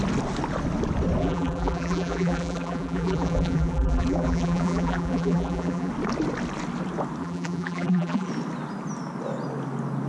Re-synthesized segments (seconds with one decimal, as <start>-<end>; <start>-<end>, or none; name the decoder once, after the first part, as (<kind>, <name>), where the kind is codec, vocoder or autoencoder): 1.2-5.9 (vocoder, BigVGAN v2); 7.2-8.3